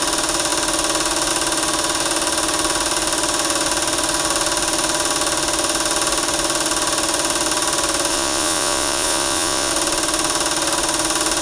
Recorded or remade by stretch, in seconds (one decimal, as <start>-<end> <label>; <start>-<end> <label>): 0.0-8.1 recorded; 8.1-9.7 remade; 9.7-11.4 recorded